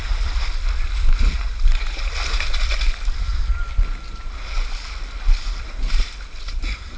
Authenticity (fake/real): real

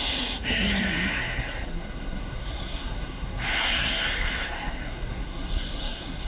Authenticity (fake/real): fake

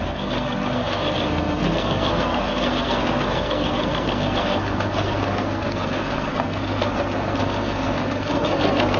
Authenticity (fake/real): fake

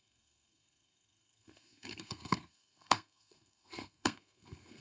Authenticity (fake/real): fake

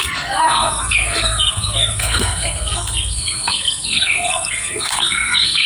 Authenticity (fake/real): fake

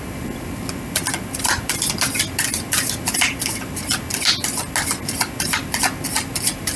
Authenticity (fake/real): real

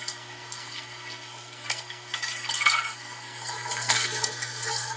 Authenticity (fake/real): fake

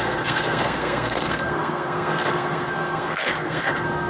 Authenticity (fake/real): fake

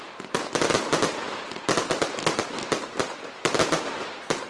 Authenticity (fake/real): real